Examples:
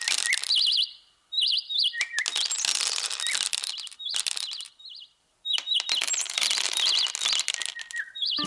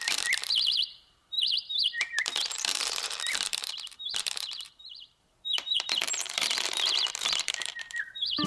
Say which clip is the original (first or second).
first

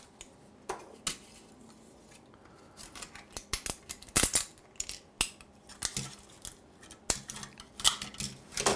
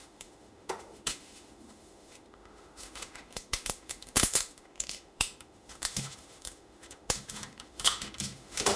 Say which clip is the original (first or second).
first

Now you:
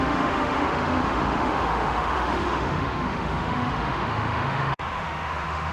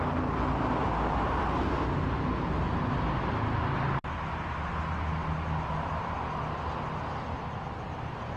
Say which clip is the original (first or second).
second